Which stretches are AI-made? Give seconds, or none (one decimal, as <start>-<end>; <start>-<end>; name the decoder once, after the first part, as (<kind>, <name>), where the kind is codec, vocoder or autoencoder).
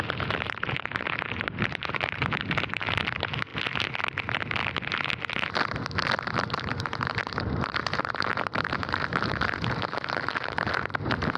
0.0-3.5 (vocoder, BigVGAN v2); 6.4-11.4